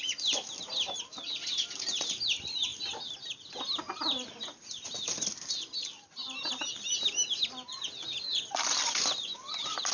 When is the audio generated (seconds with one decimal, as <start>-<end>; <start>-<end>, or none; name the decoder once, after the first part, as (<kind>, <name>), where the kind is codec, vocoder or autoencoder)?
none